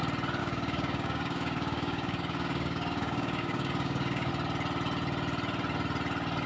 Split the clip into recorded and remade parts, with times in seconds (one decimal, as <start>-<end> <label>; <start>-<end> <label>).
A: 0.0-0.4 recorded; 0.4-4.3 remade; 4.3-6.5 recorded